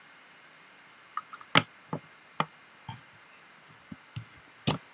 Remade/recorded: recorded